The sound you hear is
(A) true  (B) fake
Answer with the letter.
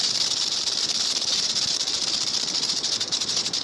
B